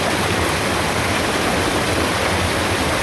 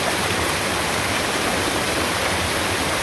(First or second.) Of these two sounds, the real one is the first